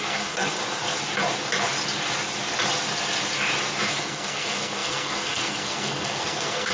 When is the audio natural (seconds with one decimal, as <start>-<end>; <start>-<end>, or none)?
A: 0.6-3.8